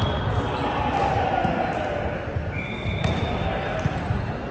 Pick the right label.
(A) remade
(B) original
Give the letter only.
B